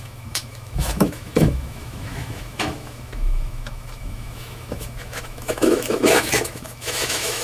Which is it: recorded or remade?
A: remade